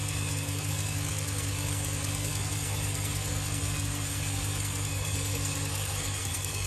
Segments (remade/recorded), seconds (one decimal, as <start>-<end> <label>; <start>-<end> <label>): 0.0-6.7 remade

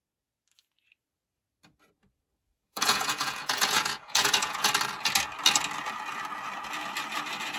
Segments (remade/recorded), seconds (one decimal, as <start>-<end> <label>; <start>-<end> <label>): 0.0-2.3 recorded; 2.3-4.7 remade; 4.7-7.6 recorded

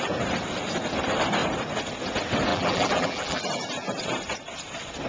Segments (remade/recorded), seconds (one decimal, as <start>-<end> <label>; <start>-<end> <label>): 0.0-2.5 recorded; 2.5-3.4 remade; 3.4-5.1 recorded

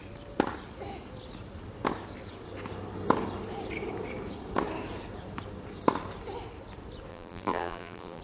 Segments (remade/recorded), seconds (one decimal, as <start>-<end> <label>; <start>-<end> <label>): 0.0-7.1 recorded; 7.1-8.2 remade

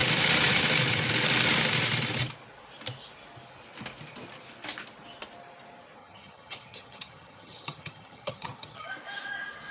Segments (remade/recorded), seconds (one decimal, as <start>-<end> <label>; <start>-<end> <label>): 0.0-6.0 recorded; 6.0-8.9 remade; 8.9-9.7 recorded